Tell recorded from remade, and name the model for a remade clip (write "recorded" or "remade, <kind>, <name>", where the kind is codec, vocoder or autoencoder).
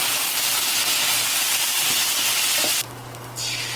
recorded